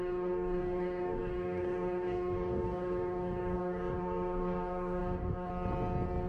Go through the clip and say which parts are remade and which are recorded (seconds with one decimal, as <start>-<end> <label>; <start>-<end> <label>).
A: 0.0-5.5 remade; 5.5-6.3 recorded